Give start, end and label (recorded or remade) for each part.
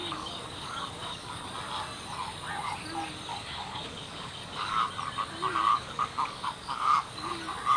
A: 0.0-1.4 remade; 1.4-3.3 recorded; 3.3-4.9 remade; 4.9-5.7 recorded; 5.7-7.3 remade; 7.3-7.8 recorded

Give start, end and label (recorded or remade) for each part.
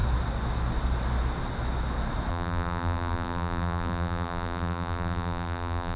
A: 0.0-2.3 recorded; 2.3-6.0 remade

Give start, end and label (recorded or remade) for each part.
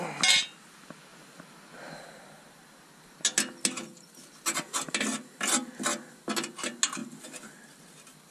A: 0.0-8.3 recorded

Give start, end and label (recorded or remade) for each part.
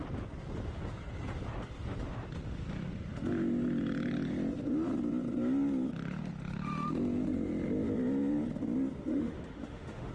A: 0.0-9.1 recorded; 9.1-10.1 remade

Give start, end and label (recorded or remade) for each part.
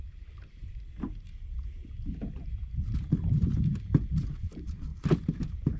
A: 0.0-5.8 remade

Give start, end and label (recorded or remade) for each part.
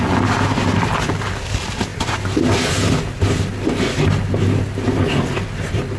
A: 0.0-6.0 recorded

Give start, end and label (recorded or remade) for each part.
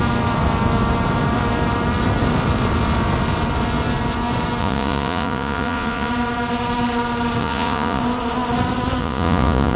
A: 0.0-4.6 recorded; 4.6-6.1 remade; 6.1-7.4 recorded; 7.4-8.0 remade; 8.0-9.0 recorded; 9.0-9.8 remade